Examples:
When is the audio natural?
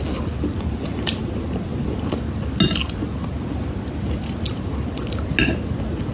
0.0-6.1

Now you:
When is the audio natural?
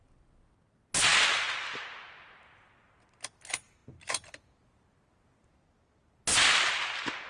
0.0-7.3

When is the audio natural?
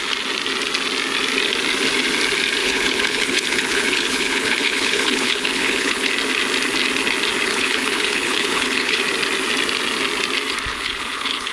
0.0-2.6; 6.1-7.5; 9.0-10.7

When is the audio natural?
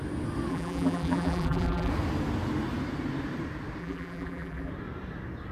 0.0-0.5; 1.9-3.8; 4.7-5.5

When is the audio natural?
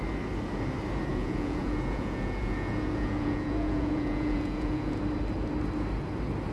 0.0-1.1; 5.0-6.5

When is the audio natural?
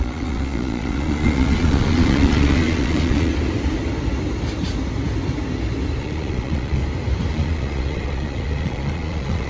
3.3-6.0; 6.8-7.3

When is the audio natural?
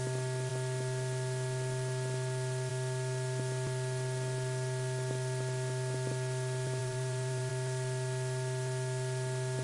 0.0-6.8; 7.5-9.6